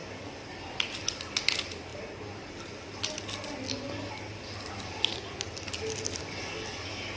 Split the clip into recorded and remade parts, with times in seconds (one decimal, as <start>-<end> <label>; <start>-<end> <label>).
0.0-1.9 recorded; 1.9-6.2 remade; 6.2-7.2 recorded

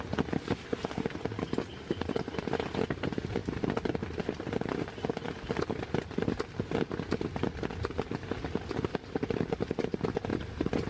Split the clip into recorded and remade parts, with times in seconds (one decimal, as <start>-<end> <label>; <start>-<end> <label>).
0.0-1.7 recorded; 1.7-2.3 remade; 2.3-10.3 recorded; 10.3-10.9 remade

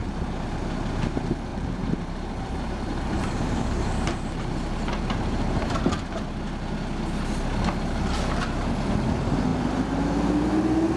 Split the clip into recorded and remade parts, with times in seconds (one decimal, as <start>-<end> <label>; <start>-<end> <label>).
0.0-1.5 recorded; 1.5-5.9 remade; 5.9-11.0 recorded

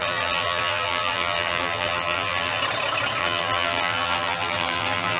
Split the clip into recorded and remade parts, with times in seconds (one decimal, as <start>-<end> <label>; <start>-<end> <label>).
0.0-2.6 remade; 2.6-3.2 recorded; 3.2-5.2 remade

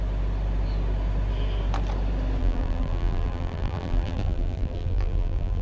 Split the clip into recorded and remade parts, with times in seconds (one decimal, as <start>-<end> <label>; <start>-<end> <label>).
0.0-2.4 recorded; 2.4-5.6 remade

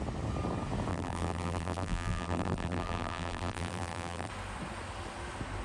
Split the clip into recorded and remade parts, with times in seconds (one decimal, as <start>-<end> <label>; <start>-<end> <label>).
0.0-0.9 recorded; 0.9-4.3 remade; 4.3-5.6 recorded

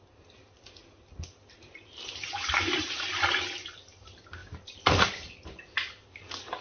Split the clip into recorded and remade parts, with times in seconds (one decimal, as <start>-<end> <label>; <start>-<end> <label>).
0.0-4.4 recorded; 4.4-6.6 remade

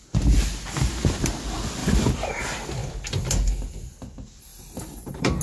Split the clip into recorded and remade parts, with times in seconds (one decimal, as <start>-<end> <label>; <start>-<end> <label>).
0.0-1.8 recorded; 1.8-2.4 remade; 2.4-4.5 recorded; 4.5-5.4 remade